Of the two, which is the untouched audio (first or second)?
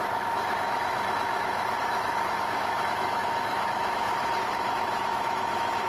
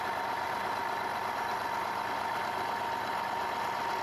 second